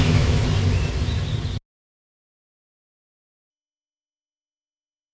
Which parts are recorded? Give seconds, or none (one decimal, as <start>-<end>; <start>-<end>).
0.4-3.5